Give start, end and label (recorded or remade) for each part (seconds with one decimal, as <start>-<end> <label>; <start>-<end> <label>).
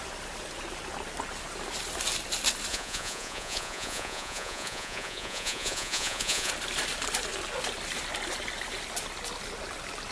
0.0-2.7 recorded; 2.7-6.5 remade; 6.5-10.1 recorded